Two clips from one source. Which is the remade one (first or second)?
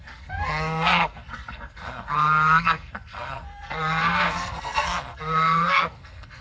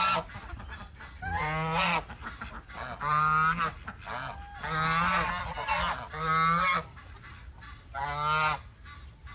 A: first